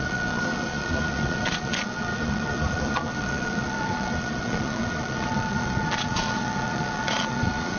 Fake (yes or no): yes